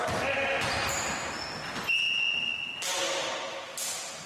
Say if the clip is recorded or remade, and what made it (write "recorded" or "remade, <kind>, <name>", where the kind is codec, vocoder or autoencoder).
recorded